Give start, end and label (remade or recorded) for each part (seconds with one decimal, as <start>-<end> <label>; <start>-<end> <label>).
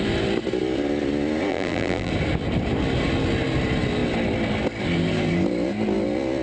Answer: 0.0-1.5 recorded; 1.5-2.1 remade; 2.1-6.4 recorded